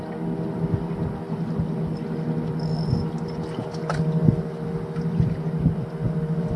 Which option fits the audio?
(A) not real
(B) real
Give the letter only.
B